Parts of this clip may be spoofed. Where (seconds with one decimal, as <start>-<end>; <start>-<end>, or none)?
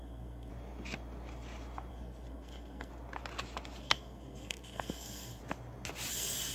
0.0-0.5; 1.9-2.9; 3.8-5.4; 6.1-6.5